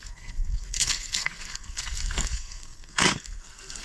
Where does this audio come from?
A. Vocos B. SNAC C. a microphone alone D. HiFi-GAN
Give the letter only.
B